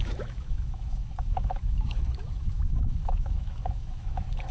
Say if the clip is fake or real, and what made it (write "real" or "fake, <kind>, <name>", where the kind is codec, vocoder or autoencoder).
fake, autoencoder, DAC-VAE